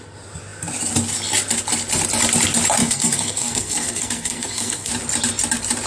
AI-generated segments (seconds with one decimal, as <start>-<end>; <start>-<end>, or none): 2.8-4.9